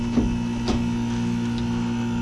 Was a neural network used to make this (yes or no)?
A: no